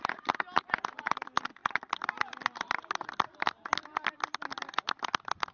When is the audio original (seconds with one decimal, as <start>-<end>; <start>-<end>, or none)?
0.0-1.6; 4.9-5.5